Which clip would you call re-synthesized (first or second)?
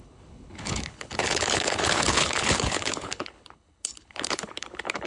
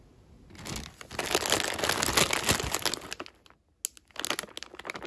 first